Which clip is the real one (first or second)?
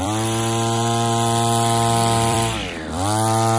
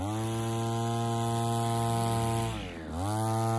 second